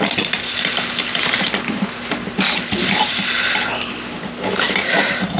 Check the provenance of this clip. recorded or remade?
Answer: recorded